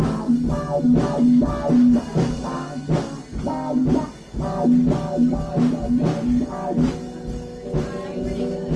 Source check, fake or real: real